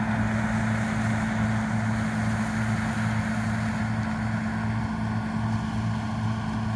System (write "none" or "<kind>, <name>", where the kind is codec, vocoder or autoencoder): none